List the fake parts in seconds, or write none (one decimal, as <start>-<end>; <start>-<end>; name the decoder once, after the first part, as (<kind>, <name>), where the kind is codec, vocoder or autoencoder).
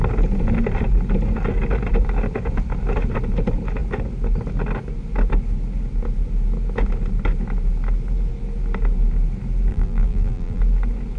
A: 9.7-10.6 (vocoder, BigVGAN v2)